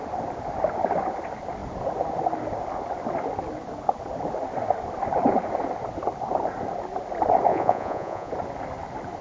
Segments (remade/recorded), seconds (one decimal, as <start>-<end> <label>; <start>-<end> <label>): 0.0-7.5 recorded; 7.5-8.3 remade; 8.3-9.2 recorded